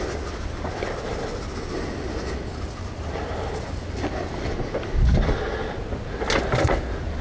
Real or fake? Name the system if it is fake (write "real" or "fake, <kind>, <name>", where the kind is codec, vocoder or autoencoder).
real